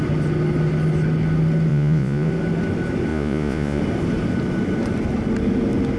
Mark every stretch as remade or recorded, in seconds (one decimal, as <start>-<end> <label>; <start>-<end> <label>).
0.0-1.7 recorded; 1.7-2.3 remade; 2.3-3.1 recorded; 3.1-3.8 remade; 3.8-6.0 recorded